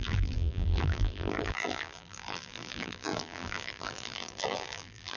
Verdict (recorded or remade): remade